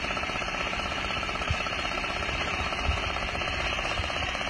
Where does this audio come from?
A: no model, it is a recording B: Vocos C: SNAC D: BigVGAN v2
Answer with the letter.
D